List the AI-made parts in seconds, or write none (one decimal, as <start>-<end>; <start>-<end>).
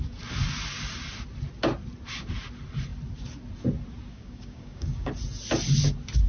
4.1-5.1